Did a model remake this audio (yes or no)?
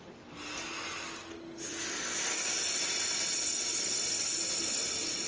no